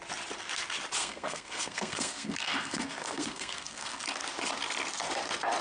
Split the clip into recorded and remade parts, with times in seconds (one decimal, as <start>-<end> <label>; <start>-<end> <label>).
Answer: 0.0-1.0 recorded; 1.0-4.0 remade; 4.0-5.6 recorded